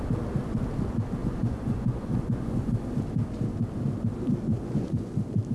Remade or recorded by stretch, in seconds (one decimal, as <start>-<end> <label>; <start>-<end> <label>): 0.0-1.2 recorded; 1.2-2.7 remade; 2.7-4.5 recorded; 4.5-5.1 remade; 5.1-5.5 recorded

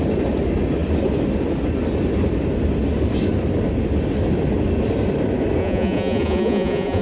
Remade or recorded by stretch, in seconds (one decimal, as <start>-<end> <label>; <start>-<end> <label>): 0.0-5.6 recorded; 5.6-7.0 remade

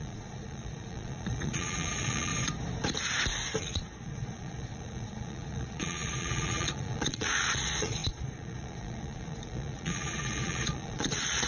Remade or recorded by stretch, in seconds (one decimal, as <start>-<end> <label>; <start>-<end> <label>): 0.0-2.3 remade; 2.3-3.6 recorded; 3.6-11.5 remade

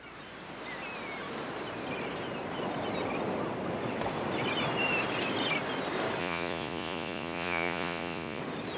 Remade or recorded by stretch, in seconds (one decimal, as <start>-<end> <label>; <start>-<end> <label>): 0.0-6.2 recorded; 6.2-8.4 remade; 8.4-8.8 recorded